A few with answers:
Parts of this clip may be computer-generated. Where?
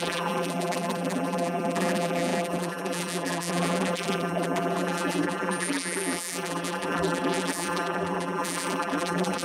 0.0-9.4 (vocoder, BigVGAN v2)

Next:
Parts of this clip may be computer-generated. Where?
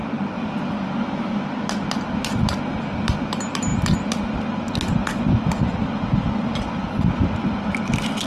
none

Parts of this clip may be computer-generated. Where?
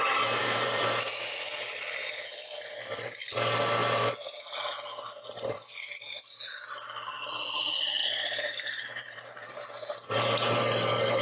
0.4-1.1 (vocoder, BigVGAN v2); 3.8-4.4; 8.0-10.6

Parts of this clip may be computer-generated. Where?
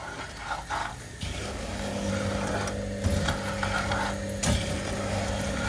0.8-2.1 (codec, DAC)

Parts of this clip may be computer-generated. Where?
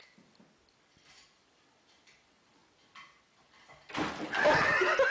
none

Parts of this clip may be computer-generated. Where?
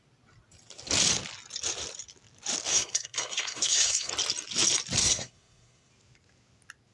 2.7-4.1 (codec, SNAC); 5.0-5.9